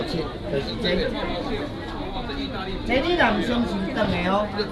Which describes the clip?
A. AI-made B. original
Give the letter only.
B